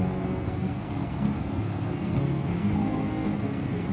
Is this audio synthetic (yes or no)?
yes